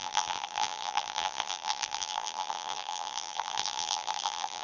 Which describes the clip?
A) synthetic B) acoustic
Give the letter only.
A